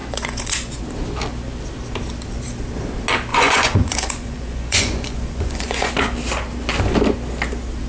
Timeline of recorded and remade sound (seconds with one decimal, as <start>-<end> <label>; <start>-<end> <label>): 0.0-0.8 remade; 0.8-3.3 recorded; 3.3-5.9 remade; 5.9-7.9 recorded